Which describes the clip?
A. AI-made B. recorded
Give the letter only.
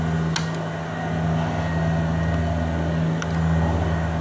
B